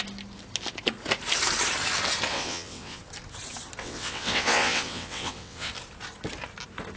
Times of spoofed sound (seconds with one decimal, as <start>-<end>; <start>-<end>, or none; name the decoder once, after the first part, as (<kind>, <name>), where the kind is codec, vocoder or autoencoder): 2.3-3.0 (vocoder, WaveNeXt); 3.8-5.7